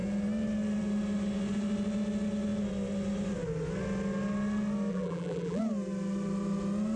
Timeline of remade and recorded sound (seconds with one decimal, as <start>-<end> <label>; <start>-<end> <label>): 0.0-4.9 recorded; 4.9-5.6 remade; 5.6-7.0 recorded